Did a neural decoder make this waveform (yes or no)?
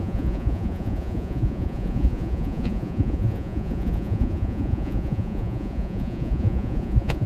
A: yes